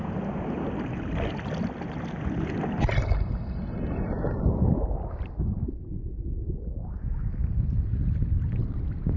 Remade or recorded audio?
recorded